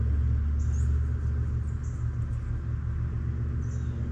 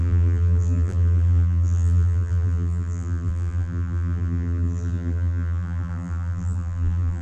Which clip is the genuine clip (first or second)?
first